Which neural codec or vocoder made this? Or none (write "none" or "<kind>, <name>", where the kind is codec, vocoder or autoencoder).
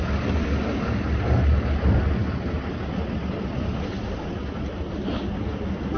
none